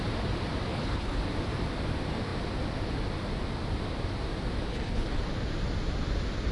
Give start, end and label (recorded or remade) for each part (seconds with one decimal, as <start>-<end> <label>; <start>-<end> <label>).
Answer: 0.0-0.7 recorded; 0.7-1.2 remade; 1.2-4.7 recorded; 4.7-5.2 remade; 5.2-6.5 recorded